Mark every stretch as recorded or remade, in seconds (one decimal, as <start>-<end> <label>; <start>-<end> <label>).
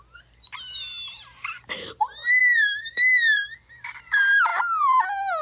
0.0-2.4 recorded; 2.4-4.0 remade; 4.0-4.5 recorded; 4.5-5.4 remade